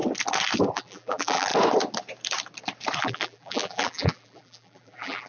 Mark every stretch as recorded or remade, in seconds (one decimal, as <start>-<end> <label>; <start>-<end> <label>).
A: 0.0-0.6 recorded; 0.6-1.5 remade; 1.5-3.0 recorded; 3.0-5.3 remade